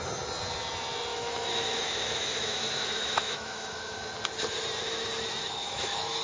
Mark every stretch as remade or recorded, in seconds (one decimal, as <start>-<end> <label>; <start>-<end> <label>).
0.0-1.1 recorded; 1.1-4.1 remade; 4.1-5.4 recorded; 5.4-6.2 remade